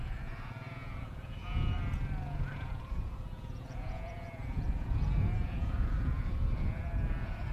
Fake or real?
fake